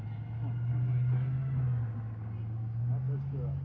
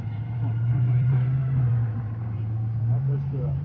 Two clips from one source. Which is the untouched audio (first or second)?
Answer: first